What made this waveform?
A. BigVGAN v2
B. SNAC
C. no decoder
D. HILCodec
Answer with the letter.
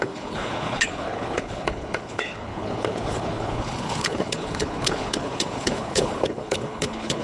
D